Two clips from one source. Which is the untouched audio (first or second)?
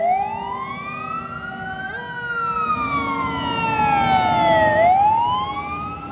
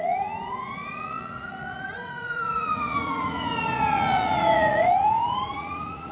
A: first